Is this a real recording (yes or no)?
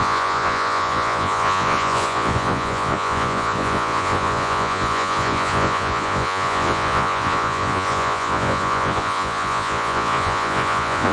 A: no